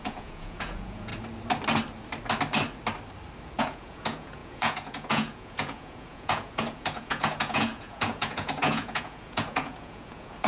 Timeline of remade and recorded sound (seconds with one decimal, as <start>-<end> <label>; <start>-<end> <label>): 0.0-1.1 remade; 1.1-3.6 recorded; 3.6-10.5 remade